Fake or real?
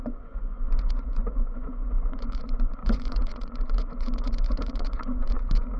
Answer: fake